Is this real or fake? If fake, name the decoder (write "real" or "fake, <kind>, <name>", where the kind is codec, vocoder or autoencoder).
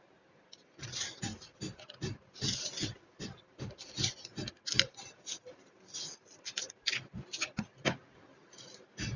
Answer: real